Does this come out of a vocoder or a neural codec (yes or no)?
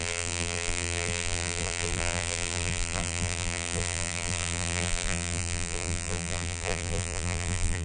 yes